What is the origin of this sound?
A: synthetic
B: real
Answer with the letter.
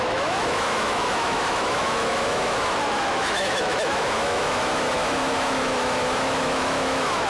A